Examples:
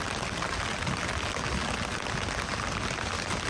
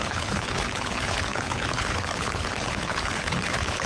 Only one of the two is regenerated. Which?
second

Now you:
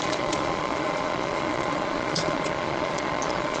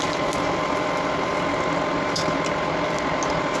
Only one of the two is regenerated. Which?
first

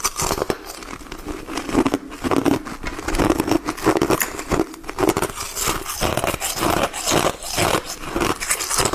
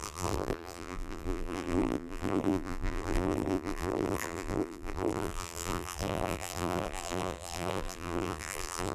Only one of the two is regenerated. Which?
second